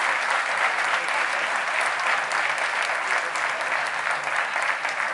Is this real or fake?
real